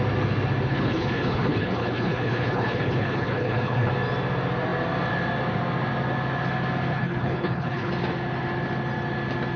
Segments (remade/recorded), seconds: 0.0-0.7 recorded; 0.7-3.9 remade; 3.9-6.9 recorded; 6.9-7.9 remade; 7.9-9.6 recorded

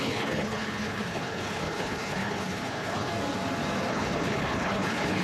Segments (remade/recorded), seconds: 0.0-3.1 remade; 3.1-3.9 recorded; 3.9-5.2 remade

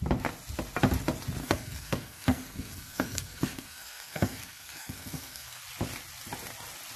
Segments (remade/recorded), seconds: 0.0-1.4 recorded; 1.4-5.6 remade; 5.6-7.0 recorded

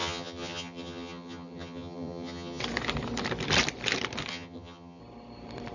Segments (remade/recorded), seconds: 0.0-2.6 remade; 2.6-4.3 recorded; 4.3-5.0 remade; 5.0-5.7 recorded

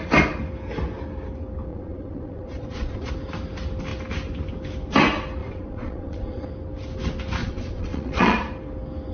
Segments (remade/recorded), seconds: 0.0-1.7 recorded; 1.7-3.1 remade; 3.1-5.4 recorded; 5.4-6.5 remade; 6.5-7.4 recorded; 7.4-8.4 remade; 8.4-9.1 recorded